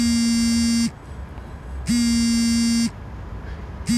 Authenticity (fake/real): real